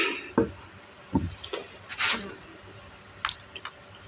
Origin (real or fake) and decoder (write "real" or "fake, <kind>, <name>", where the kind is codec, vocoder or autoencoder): real